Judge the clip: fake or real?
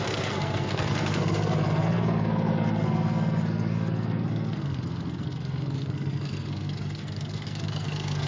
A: fake